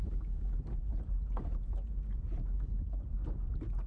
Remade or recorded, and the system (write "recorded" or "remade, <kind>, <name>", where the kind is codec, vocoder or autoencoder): remade, vocoder, BigVGAN v2